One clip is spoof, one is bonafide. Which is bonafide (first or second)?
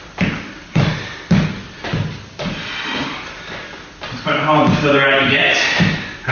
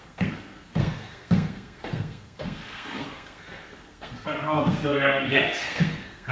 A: first